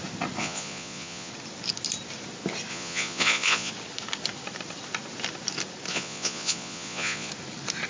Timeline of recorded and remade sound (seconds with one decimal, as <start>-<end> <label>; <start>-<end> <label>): 0.0-0.4 recorded; 0.4-1.3 remade; 1.3-2.7 recorded; 2.7-3.7 remade; 3.7-5.9 recorded; 5.9-7.3 remade; 7.3-7.9 recorded

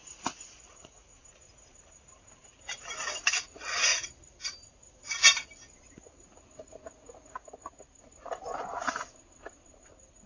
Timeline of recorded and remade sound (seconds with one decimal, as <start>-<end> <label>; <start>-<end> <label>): 0.0-1.2 remade; 1.2-10.3 recorded

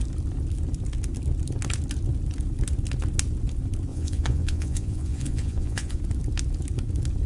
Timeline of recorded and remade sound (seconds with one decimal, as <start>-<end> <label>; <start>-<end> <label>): 0.0-3.9 recorded; 3.9-6.0 remade; 6.0-7.3 recorded

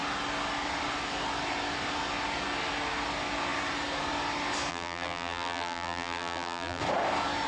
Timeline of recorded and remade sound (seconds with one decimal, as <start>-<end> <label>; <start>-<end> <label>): 0.0-4.7 recorded; 4.7-6.8 remade; 6.8-7.5 recorded

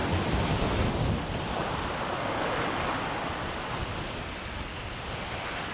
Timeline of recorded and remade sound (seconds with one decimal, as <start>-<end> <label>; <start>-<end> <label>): 0.0-5.7 recorded

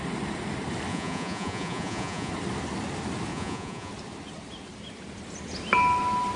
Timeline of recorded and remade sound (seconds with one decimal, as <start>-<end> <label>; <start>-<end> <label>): 0.0-0.9 recorded; 0.9-2.3 remade; 2.3-3.3 recorded; 3.3-3.9 remade; 3.9-6.4 recorded